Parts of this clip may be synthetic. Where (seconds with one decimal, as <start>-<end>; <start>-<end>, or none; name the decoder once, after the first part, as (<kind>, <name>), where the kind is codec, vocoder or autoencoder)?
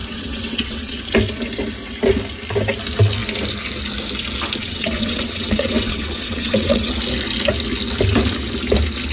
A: 0.0-1.0 (vocoder, WaveNeXt); 4.6-6.9